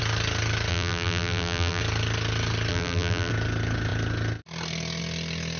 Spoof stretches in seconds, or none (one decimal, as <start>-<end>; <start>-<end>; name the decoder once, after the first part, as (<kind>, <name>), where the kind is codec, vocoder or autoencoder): 0.7-1.8 (vocoder, BigVGAN v2); 2.7-3.3